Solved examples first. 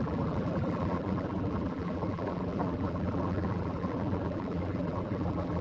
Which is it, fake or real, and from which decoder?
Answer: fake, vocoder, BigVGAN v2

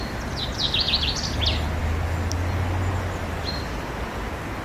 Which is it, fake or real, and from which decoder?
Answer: real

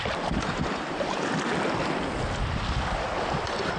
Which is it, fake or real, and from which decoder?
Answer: real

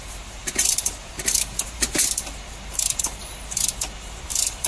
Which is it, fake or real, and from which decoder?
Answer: fake, vocoder, BigVGAN v2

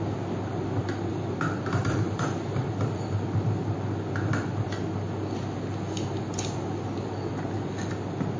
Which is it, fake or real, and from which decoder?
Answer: real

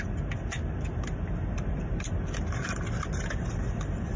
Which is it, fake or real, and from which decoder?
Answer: real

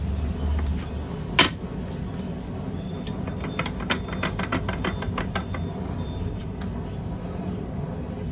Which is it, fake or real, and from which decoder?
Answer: real